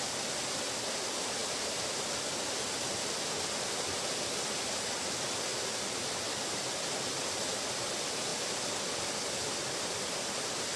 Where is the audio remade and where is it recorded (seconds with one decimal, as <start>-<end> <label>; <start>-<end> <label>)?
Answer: 0.0-10.8 recorded